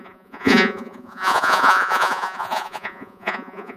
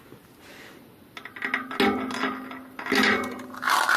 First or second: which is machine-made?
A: first